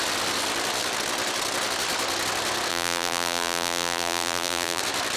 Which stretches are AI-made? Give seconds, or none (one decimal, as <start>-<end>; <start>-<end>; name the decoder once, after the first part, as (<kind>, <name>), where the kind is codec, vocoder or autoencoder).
2.7-4.8 (vocoder, BigVGAN v2)